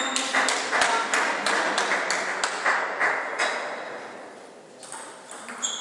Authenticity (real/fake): real